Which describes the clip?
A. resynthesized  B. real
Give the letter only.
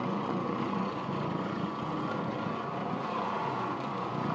A